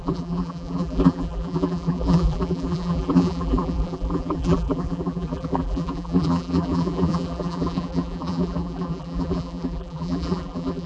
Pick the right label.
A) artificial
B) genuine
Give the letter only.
A